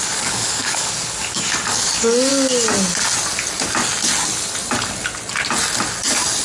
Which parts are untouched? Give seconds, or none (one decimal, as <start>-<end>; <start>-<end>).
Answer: 2.3-6.4